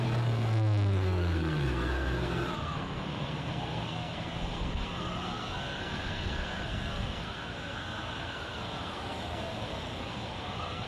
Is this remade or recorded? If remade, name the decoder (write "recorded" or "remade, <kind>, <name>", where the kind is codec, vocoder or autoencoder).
remade, codec, SNAC